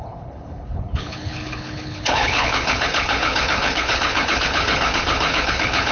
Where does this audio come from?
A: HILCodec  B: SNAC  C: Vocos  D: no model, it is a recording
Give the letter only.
A